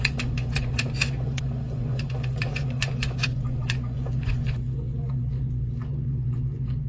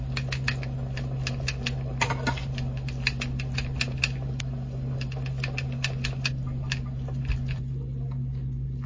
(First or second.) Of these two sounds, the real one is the second